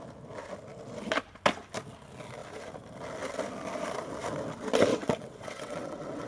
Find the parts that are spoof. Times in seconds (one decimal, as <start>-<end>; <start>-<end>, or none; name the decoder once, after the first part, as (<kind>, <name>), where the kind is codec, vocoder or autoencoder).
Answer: 4.9-6.3 (vocoder, WaveNeXt)